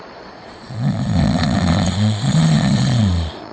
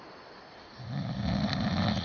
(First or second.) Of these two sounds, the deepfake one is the first